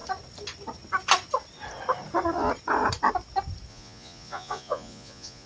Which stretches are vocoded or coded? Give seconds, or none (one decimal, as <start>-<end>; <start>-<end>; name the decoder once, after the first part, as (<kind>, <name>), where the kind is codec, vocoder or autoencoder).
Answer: 3.7-5.5 (vocoder, Vocos)